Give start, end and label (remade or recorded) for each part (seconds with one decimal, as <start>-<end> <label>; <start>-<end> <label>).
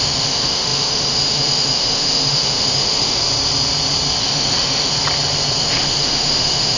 0.0-3.2 remade; 3.2-4.2 recorded; 4.2-4.9 remade; 4.9-5.6 recorded; 5.6-6.8 remade